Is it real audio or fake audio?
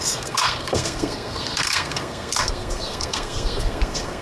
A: fake